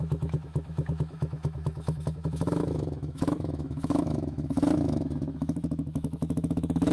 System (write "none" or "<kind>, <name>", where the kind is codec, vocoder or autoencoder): autoencoder, DAC-VAE